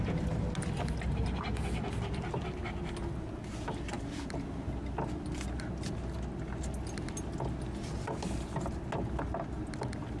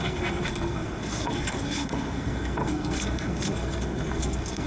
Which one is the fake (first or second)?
second